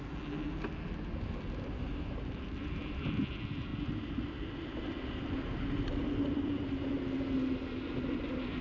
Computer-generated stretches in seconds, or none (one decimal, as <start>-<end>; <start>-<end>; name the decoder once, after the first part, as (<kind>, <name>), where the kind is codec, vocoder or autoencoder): none